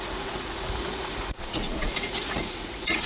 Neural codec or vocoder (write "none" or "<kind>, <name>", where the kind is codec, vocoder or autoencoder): vocoder, Vocos